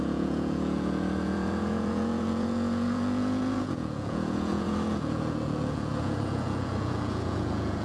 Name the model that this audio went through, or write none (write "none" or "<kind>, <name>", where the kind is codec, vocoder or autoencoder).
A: vocoder, Vocos